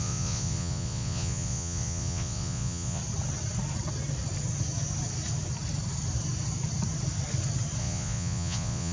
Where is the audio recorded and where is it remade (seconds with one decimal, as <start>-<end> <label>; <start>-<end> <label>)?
0.0-3.0 remade; 3.0-7.8 recorded; 7.8-8.9 remade